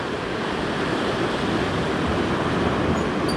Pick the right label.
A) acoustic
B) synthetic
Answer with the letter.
A